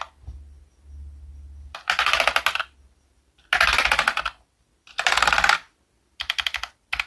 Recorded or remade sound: recorded